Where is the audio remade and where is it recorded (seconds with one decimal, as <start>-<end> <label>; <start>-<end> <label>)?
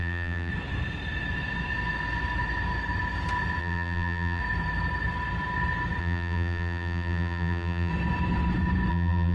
0.0-0.5 remade; 0.5-3.6 recorded; 3.6-4.4 remade; 4.4-6.0 recorded; 6.0-7.9 remade; 7.9-8.9 recorded; 8.9-9.3 remade